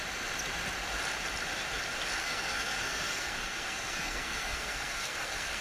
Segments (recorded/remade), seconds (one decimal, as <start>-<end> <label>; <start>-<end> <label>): 0.0-2.2 recorded; 2.2-5.6 remade